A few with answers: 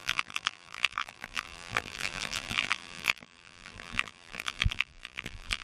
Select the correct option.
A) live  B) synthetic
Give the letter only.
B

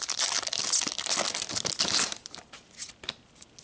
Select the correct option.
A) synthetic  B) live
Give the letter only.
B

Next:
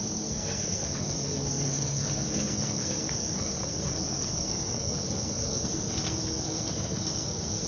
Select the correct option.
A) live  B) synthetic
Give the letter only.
B